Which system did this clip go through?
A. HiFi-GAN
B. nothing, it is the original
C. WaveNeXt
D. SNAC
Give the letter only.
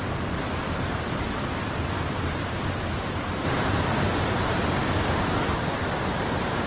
B